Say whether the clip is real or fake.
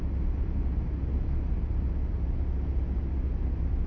real